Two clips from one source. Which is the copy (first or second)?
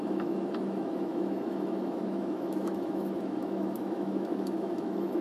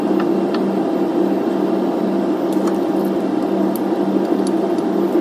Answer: first